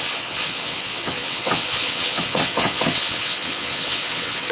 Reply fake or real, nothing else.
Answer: fake